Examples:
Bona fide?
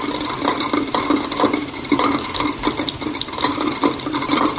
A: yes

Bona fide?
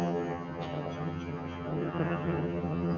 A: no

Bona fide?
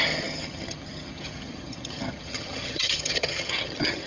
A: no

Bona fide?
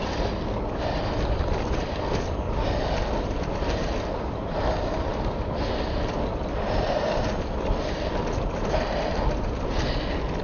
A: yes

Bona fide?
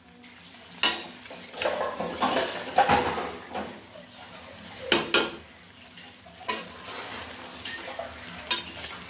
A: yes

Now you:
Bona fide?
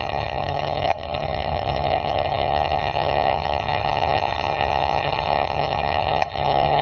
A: no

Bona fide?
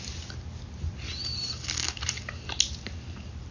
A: yes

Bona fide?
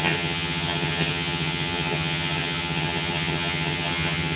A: no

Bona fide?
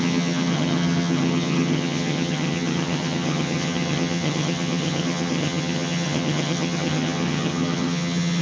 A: no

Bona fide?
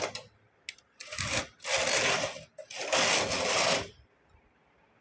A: yes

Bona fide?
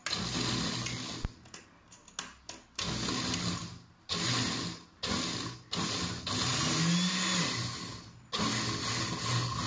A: yes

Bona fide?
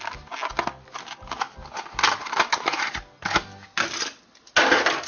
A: yes